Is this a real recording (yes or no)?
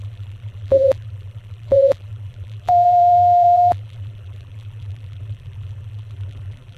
no